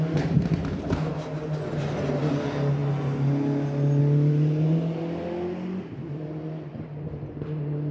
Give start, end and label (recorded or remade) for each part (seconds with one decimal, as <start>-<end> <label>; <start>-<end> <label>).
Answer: 0.0-0.6 recorded; 0.6-1.1 remade; 1.1-7.9 recorded